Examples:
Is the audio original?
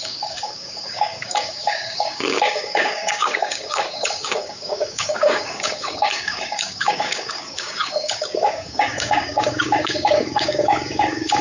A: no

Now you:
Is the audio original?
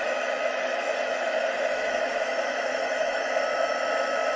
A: no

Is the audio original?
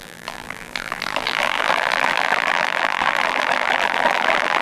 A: no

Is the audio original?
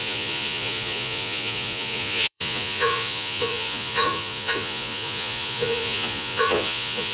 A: no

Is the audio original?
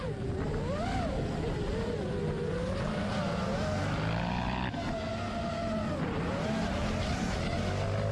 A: yes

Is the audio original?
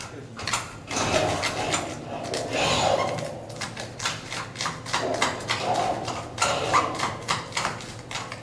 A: yes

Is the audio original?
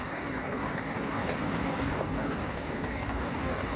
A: no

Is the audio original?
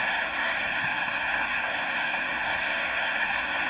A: no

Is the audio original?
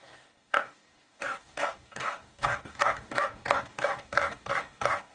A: no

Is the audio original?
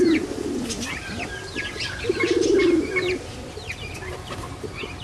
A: no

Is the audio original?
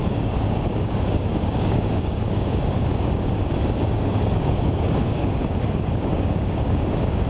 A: no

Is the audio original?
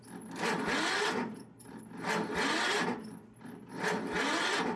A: yes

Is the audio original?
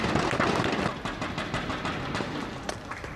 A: yes